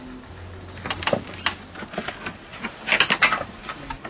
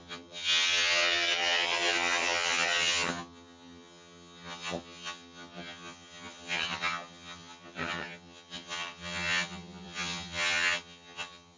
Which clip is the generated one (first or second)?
second